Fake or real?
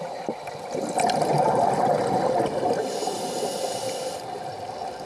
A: real